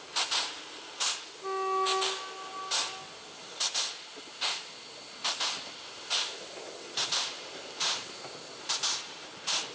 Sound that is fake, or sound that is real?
real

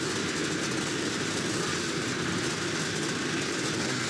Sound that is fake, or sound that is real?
real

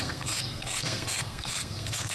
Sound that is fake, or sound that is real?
fake